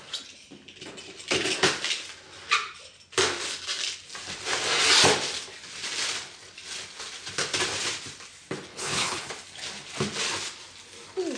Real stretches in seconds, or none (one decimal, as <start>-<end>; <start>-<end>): 0.0-8.7; 9.3-11.4